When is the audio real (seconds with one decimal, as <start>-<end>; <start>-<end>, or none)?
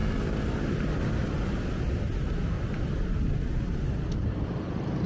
0.0-5.1